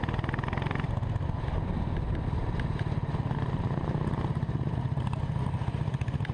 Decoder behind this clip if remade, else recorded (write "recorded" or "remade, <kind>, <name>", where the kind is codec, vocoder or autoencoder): recorded